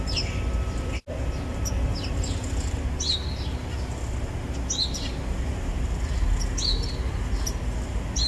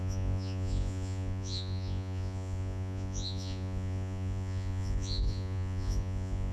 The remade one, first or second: second